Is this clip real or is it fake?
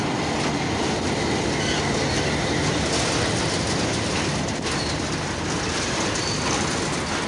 real